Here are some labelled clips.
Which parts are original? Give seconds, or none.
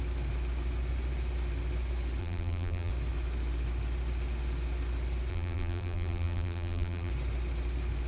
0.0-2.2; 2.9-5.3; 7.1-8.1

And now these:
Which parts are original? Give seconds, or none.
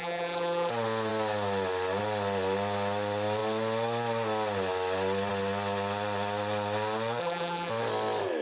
0.7-7.2; 7.7-8.4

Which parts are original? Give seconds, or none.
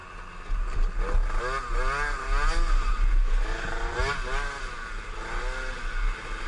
0.0-6.5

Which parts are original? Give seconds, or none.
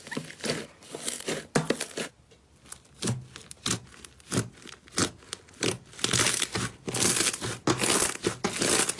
0.0-9.0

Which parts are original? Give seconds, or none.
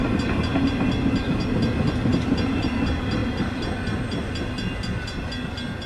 0.0-2.1; 2.7-3.2; 4.4-5.9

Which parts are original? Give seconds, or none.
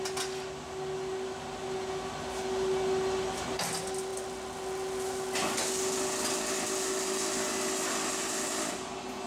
0.0-9.3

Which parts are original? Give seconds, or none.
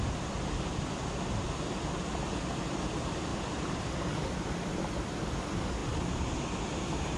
0.0-3.3; 3.9-7.2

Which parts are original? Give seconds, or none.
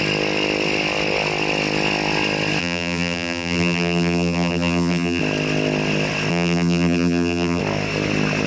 0.0-2.6; 5.2-6.3; 7.6-8.5